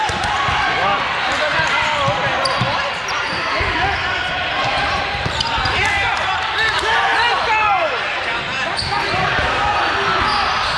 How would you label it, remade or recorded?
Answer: recorded